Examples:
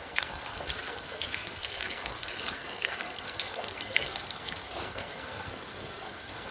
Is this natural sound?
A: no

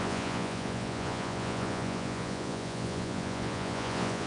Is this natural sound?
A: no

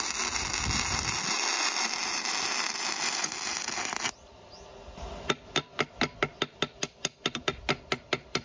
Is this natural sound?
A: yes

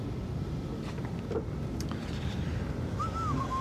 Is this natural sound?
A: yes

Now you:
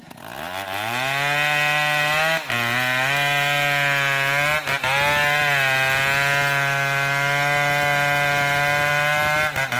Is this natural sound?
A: yes